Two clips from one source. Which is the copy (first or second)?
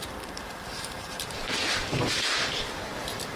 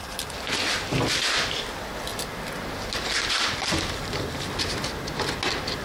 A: first